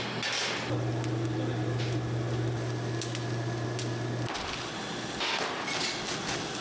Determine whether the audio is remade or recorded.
recorded